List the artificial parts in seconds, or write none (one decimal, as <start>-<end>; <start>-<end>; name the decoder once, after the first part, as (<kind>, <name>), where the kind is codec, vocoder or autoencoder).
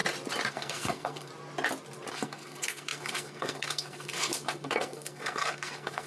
0.5-1.3 (codec, SNAC); 2.1-6.1